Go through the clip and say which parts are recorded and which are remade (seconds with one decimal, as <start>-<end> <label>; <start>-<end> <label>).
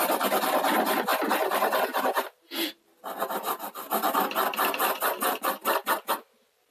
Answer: 0.0-6.7 recorded